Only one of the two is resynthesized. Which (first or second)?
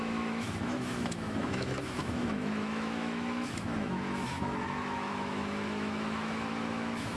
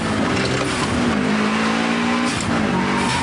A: first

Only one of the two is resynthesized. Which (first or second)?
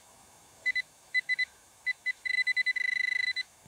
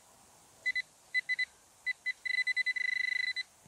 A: first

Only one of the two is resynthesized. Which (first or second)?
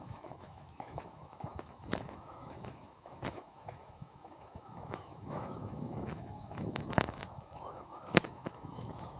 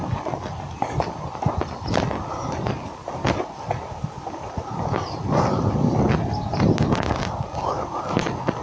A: first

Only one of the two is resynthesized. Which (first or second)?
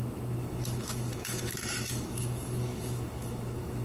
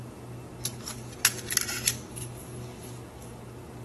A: first